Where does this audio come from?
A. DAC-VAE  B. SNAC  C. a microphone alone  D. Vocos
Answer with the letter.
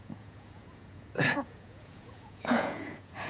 D